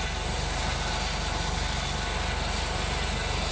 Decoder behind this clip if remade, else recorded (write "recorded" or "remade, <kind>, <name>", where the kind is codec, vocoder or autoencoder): recorded